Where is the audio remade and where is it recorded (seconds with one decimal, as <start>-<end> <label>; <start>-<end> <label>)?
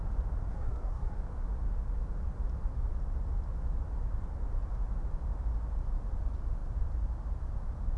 0.0-0.5 recorded; 0.5-1.2 remade; 1.2-8.0 recorded